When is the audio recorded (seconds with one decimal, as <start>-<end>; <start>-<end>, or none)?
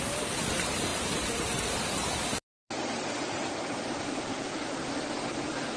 0.0-0.9; 4.4-5.8